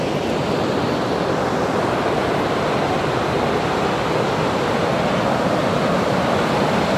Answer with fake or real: real